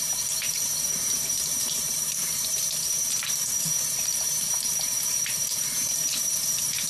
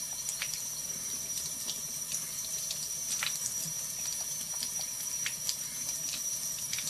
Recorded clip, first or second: second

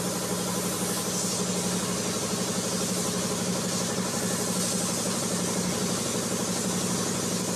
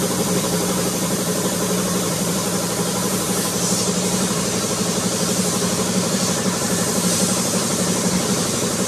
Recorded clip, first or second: first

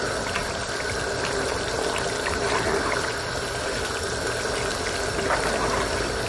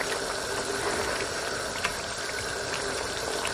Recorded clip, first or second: first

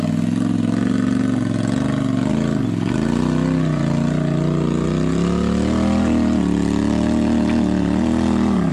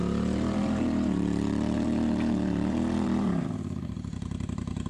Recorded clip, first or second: first